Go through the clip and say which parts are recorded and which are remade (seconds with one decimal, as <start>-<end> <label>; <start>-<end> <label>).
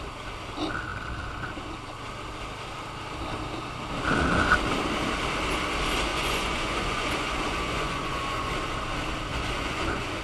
0.0-6.1 recorded; 6.1-8.5 remade; 8.5-9.3 recorded; 9.3-10.2 remade